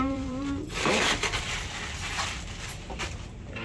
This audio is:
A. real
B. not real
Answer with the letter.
B